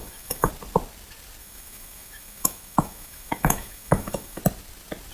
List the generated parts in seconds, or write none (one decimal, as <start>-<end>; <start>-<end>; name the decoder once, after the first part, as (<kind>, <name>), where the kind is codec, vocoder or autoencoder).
0.0-0.5 (autoencoder, DAC-VAE); 1.4-4.4